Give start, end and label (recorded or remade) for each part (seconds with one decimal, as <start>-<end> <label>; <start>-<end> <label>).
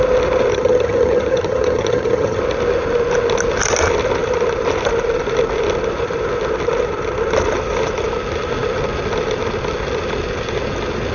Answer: 0.0-0.5 recorded; 0.5-2.4 remade; 2.4-11.1 recorded